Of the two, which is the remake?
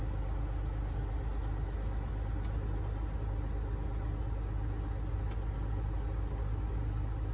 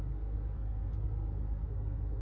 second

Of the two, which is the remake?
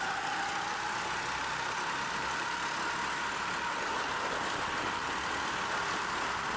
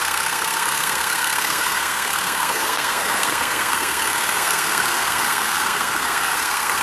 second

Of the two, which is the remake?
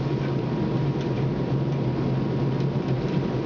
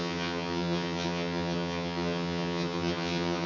second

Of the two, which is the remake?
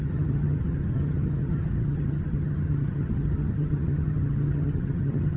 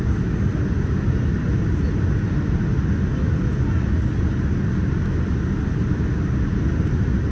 first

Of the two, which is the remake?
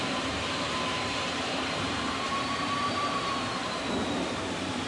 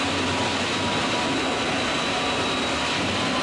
first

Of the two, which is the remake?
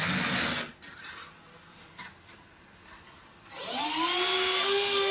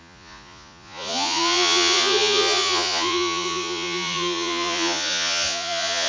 second